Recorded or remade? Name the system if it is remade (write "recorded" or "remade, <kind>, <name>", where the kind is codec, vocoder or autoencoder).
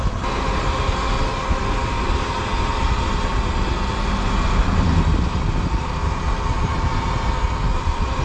recorded